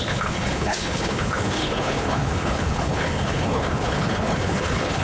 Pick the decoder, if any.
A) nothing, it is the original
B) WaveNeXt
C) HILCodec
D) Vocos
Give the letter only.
C